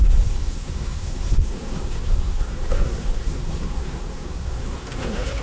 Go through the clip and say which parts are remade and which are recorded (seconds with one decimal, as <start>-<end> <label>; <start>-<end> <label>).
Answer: 0.0-5.4 remade